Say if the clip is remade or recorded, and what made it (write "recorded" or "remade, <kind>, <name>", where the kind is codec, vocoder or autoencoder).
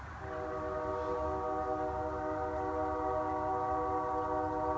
recorded